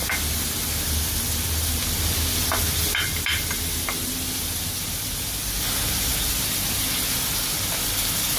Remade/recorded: recorded